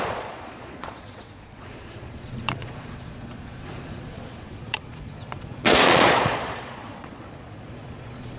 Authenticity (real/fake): fake